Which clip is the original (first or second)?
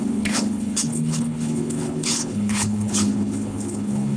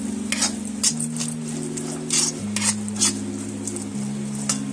second